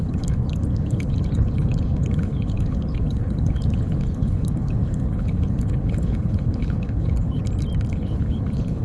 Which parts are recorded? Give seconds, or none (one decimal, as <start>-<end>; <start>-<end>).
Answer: 7.4-7.9